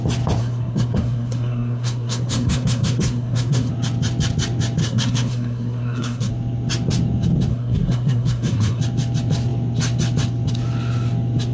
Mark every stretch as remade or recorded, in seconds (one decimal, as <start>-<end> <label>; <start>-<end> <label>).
0.0-0.4 recorded; 0.4-3.7 remade; 3.7-4.8 recorded; 4.8-6.3 remade; 6.3-7.5 recorded; 7.5-8.8 remade; 8.8-11.5 recorded